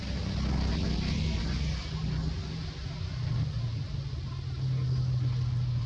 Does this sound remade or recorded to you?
recorded